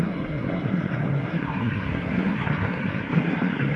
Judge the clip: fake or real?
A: fake